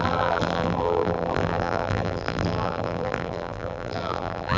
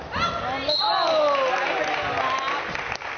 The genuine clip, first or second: second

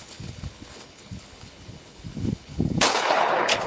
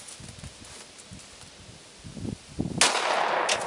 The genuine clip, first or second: second